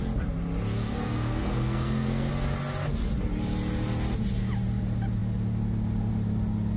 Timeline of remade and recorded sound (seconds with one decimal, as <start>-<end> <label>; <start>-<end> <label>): 0.0-0.8 recorded; 0.8-2.3 remade; 2.3-6.8 recorded